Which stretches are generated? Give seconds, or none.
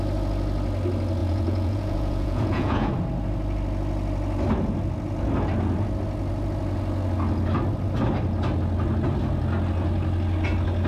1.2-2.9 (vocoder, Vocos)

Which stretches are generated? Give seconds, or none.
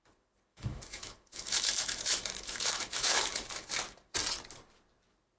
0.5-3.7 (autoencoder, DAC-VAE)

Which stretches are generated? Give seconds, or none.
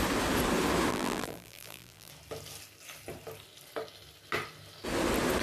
0.9-2.1 (vocoder, BigVGAN v2)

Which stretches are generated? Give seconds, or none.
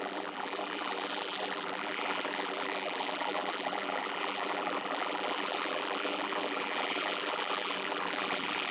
0.0-8.7 (vocoder, BigVGAN v2)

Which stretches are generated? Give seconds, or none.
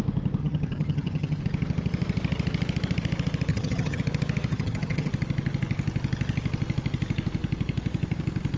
0.4-1.4 (vocoder, HiFi-GAN); 3.5-4.0; 4.5-5.1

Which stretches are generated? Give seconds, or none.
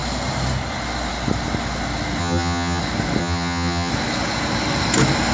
2.2-2.8 (vocoder, HiFi-GAN); 3.2-3.9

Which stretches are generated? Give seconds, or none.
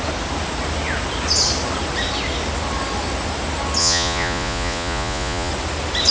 3.8-5.5 (vocoder, Vocos)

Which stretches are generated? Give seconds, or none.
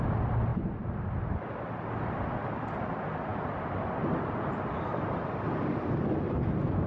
none